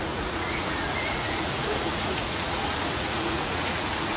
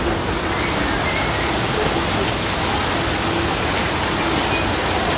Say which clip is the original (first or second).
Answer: second